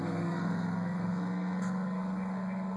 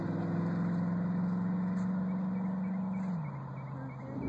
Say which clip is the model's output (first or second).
first